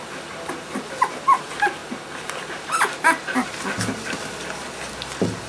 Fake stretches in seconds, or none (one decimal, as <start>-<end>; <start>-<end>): none